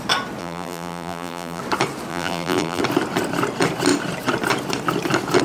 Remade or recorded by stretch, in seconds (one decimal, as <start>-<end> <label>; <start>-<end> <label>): 0.0-0.4 recorded; 0.4-1.6 remade; 1.6-2.1 recorded; 2.1-2.8 remade; 2.8-5.4 recorded